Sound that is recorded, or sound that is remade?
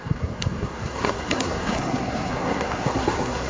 remade